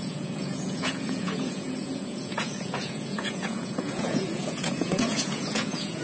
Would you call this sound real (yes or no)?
no